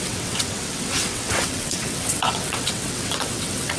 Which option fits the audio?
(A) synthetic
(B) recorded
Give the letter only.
A